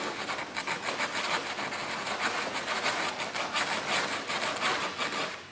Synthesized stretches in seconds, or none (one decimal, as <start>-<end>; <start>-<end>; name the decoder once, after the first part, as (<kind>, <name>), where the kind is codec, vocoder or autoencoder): 1.8-3.1 (vocoder, Vocos)